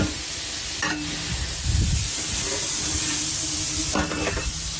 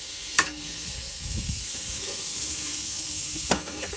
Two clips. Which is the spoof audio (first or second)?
second